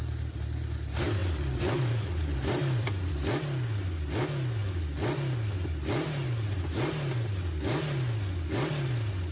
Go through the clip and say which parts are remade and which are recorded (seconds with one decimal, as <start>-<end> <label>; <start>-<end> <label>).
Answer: 0.0-1.2 recorded; 1.2-3.1 remade; 3.1-9.3 recorded